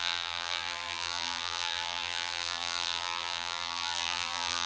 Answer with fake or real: fake